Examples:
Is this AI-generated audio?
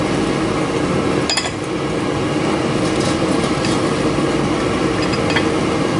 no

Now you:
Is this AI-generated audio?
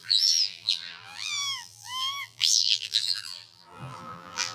yes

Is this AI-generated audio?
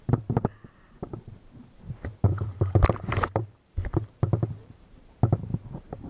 yes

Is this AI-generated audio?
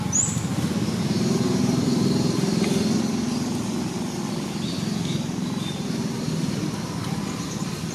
yes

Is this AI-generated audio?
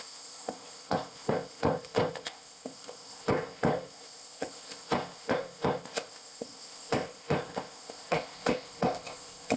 yes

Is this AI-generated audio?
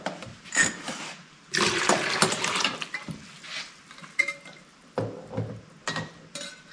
no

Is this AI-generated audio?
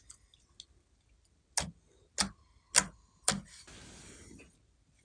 no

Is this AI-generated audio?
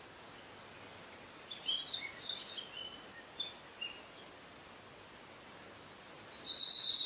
no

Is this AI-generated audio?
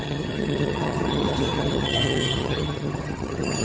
yes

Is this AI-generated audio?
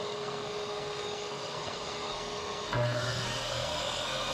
yes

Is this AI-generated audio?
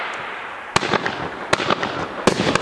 no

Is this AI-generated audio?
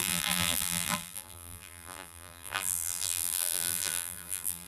yes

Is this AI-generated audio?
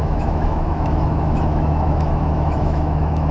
yes